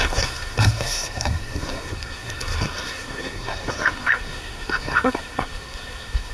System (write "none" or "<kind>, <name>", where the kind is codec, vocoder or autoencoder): codec, SNAC